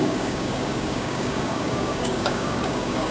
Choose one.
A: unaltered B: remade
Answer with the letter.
B